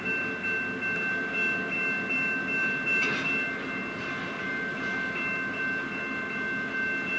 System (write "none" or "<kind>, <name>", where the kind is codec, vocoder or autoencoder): none